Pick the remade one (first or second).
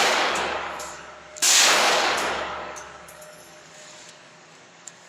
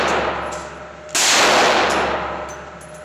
first